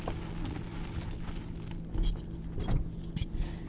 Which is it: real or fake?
real